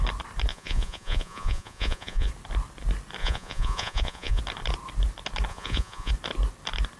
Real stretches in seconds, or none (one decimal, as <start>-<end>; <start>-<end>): 0.0-0.5; 2.3-3.2; 4.4-5.5; 6.1-7.0